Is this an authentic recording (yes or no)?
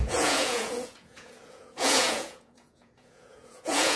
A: no